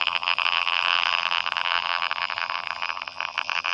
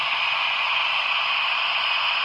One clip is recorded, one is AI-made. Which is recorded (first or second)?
second